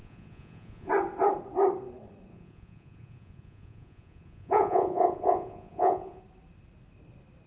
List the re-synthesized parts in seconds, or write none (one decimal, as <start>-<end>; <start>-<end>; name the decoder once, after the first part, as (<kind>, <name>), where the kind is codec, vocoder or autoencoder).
0.0-0.9 (vocoder, Vocos); 2.3-6.2